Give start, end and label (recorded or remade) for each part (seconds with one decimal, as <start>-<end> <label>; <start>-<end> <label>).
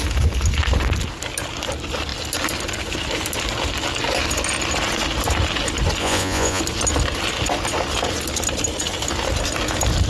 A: 0.0-6.0 recorded; 6.0-6.6 remade; 6.6-10.1 recorded